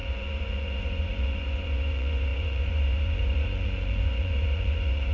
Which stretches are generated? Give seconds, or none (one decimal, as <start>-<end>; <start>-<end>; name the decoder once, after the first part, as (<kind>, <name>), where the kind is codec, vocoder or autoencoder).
0.0-5.1 (vocoder, Vocos)